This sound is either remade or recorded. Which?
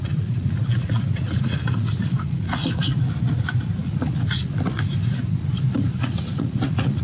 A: remade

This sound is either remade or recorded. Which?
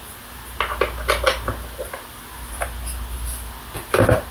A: recorded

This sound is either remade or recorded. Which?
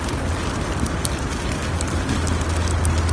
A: recorded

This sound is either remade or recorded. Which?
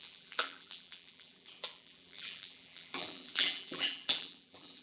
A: remade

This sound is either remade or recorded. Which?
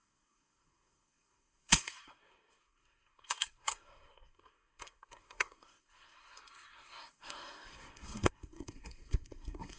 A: remade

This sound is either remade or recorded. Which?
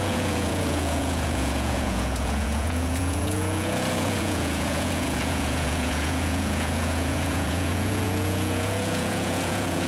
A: remade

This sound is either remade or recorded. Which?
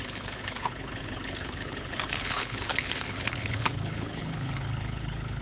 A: remade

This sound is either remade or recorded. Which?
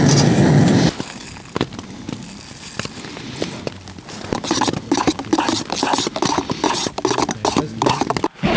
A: recorded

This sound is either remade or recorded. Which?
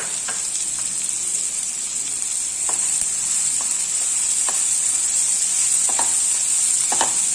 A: recorded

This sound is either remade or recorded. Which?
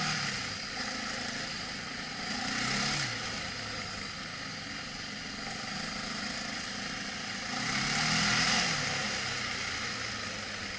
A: recorded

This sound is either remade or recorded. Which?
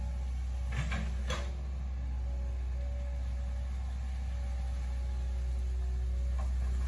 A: recorded